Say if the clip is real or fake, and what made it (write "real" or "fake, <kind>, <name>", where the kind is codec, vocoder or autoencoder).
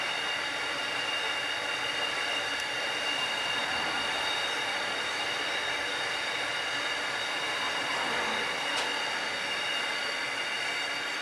real